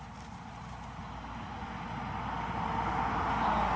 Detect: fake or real real